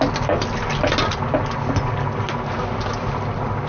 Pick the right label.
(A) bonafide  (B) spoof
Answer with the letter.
A